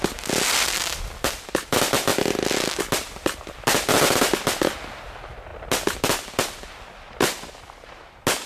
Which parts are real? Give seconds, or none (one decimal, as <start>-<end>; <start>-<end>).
0.0-8.5